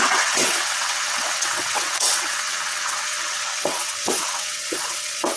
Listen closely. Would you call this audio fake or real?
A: fake